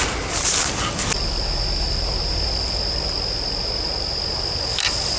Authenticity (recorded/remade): recorded